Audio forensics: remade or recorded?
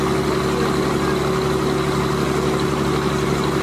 recorded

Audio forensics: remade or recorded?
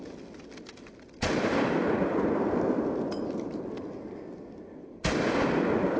recorded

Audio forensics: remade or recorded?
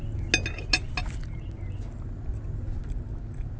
recorded